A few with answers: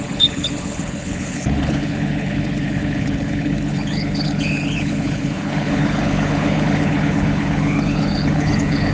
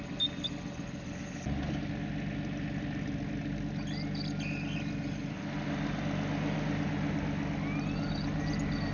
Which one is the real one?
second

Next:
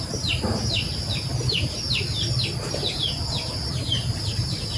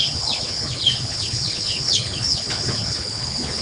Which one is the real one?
first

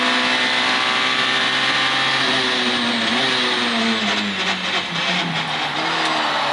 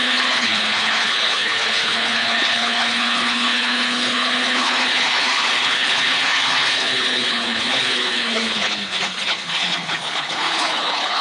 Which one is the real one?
first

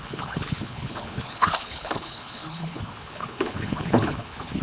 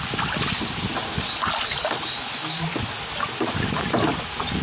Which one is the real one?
second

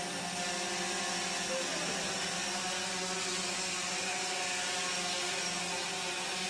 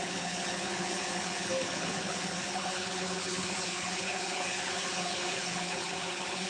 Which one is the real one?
first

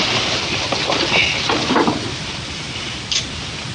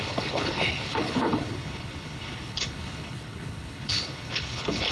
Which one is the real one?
first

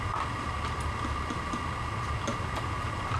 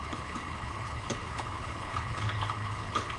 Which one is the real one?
first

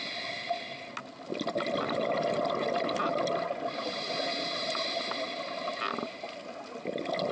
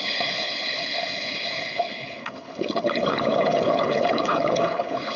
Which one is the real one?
first